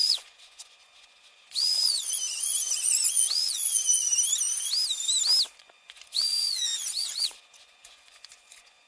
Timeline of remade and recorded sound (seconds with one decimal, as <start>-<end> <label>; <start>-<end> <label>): 0.0-4.1 remade; 4.1-5.6 recorded; 5.6-8.9 remade

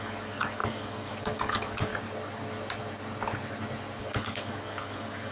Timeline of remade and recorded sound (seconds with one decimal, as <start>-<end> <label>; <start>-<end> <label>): 0.0-1.9 remade; 1.9-4.0 recorded; 4.0-5.3 remade